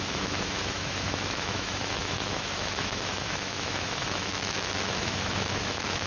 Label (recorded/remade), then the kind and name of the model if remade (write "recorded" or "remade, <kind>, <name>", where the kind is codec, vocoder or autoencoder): remade, autoencoder, DAC-VAE